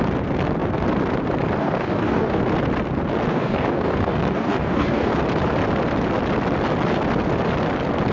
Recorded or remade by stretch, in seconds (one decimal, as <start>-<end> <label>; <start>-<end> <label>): 0.0-1.6 recorded; 1.6-2.4 remade; 2.4-3.3 recorded; 3.3-5.1 remade; 5.1-8.1 recorded